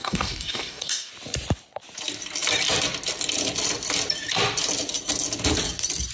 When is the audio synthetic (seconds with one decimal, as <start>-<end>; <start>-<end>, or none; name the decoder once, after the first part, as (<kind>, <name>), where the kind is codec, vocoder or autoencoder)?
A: 0.0-1.1 (codec, DAC)